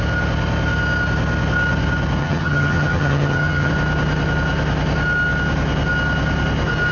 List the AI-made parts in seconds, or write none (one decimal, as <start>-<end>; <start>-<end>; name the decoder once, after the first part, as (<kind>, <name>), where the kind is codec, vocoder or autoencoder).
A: 2.2-3.7 (vocoder, HiFi-GAN)